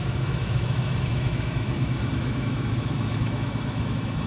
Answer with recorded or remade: remade